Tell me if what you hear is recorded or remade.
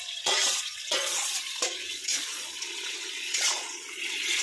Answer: remade